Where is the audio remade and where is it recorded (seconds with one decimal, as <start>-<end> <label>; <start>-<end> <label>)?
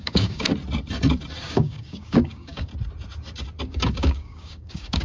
0.0-0.5 remade; 0.5-1.4 recorded; 1.4-2.7 remade; 2.7-3.6 recorded; 3.6-5.0 remade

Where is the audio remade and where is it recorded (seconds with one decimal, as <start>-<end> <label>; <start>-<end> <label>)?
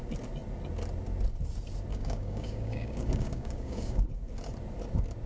0.0-1.9 recorded; 1.9-4.0 remade; 4.0-5.3 recorded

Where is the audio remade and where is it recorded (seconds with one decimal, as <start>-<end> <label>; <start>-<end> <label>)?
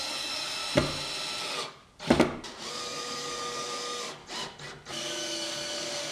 0.0-0.6 remade; 0.6-1.4 recorded; 1.4-1.8 remade; 1.8-2.7 recorded; 2.7-4.2 remade; 4.2-4.9 recorded; 4.9-6.1 remade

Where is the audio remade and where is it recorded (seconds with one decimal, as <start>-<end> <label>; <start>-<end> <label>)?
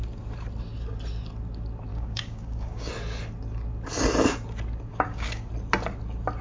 0.0-1.9 recorded; 1.9-2.9 remade; 2.9-4.9 recorded; 4.9-5.5 remade; 5.5-6.4 recorded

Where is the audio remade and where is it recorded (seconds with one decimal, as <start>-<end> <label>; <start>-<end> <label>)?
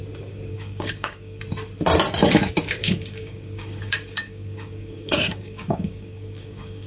0.0-0.5 recorded; 0.5-1.4 remade; 1.4-2.8 recorded; 2.8-6.9 remade